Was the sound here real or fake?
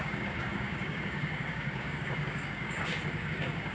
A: fake